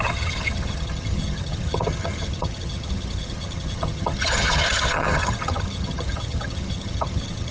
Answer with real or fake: fake